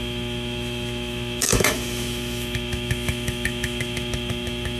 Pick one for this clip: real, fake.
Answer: fake